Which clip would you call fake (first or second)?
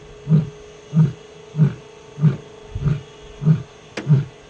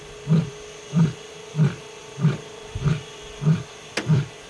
second